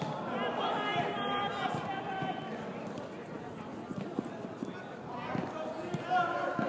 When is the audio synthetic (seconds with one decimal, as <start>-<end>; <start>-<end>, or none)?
none